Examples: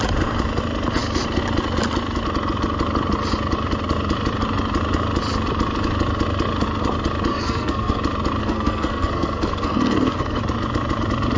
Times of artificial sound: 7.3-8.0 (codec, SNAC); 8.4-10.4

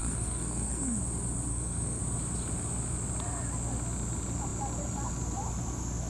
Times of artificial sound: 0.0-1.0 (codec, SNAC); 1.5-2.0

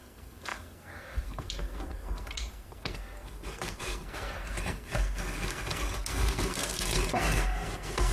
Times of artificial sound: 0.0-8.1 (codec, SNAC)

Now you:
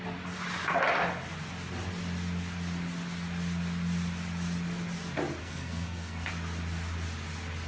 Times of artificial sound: 5.4-6.3 (codec, SNAC)

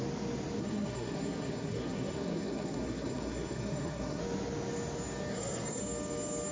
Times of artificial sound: 0.6-4.2 (codec, SNAC); 5.3-5.8